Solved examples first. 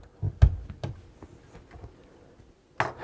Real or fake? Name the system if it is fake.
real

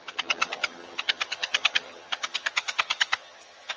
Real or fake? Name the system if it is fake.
fake, vocoder, HiFi-GAN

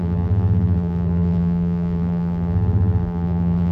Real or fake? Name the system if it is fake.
fake, vocoder, BigVGAN v2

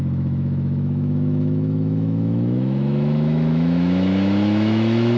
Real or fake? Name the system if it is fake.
fake, autoencoder, DAC-VAE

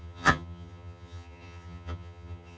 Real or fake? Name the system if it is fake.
fake, vocoder, HiFi-GAN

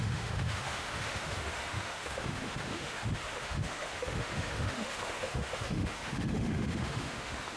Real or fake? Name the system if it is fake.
fake, autoencoder, DAC-VAE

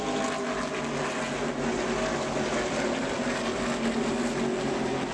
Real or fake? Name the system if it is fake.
real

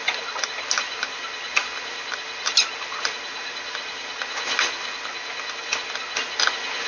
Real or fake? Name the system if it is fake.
real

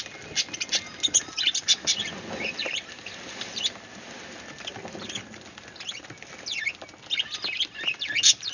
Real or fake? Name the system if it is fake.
real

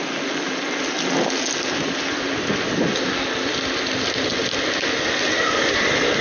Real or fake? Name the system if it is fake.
real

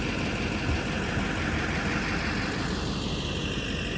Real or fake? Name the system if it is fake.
real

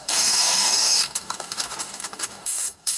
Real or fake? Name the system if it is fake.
fake, codec, DAC